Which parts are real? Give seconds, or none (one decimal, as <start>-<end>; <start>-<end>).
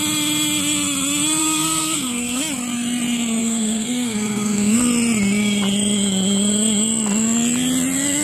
0.0-1.4; 2.4-3.4; 4.8-8.2